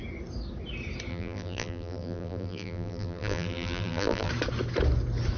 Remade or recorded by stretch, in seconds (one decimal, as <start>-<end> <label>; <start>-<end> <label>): 0.0-1.1 recorded; 1.1-4.3 remade; 4.3-5.4 recorded